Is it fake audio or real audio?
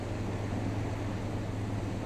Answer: real